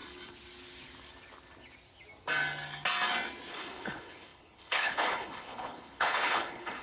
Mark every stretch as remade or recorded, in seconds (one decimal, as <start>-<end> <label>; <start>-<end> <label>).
0.0-3.5 recorded; 3.5-6.8 remade